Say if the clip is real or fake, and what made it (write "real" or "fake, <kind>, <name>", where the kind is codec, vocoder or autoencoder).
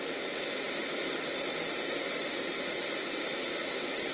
real